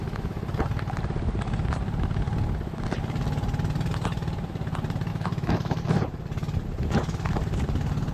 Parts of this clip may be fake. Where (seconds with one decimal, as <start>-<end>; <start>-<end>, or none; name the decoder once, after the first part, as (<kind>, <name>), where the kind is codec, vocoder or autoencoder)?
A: 0.0-0.5 (autoencoder, DAC-VAE); 5.1-5.8